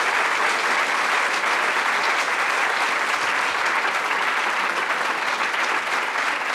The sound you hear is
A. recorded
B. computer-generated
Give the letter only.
A